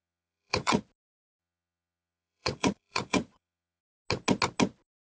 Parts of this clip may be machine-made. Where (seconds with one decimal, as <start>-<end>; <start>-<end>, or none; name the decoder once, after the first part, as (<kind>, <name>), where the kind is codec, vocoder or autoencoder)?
0.0-0.8 (vocoder, Vocos); 1.4-3.8